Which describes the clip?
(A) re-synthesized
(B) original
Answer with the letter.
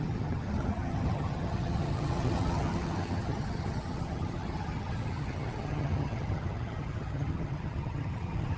A